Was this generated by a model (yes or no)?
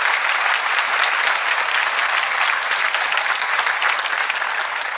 no